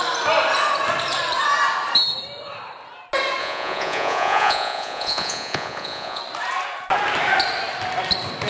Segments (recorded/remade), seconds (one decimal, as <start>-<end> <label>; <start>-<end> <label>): 0.0-3.4 recorded; 3.4-6.2 remade; 6.2-8.5 recorded